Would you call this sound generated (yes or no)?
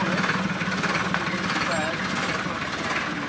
no